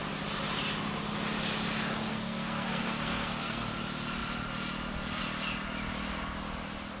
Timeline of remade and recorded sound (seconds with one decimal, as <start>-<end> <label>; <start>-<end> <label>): 0.0-2.1 recorded; 2.1-3.7 remade; 3.7-7.0 recorded